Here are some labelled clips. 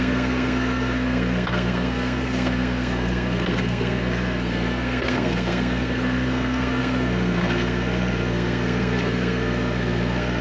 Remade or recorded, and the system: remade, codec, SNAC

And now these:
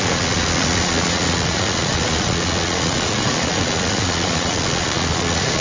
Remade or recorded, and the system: remade, vocoder, Vocos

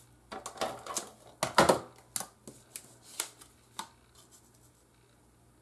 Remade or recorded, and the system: recorded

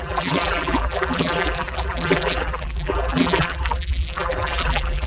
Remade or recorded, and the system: remade, vocoder, BigVGAN v2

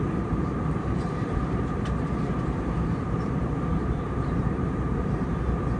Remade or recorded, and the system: remade, vocoder, BigVGAN v2